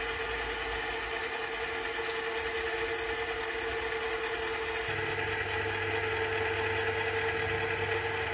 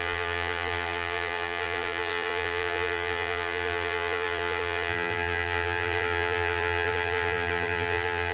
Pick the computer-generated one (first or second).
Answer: second